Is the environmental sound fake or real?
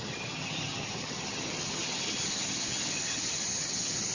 fake